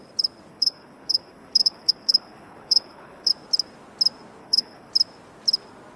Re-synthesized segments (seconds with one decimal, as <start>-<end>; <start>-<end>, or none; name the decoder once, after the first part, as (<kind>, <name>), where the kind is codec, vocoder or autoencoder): 0.5-3.3 (codec, HILCodec); 4.4-4.9